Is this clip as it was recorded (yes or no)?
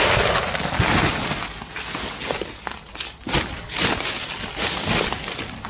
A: yes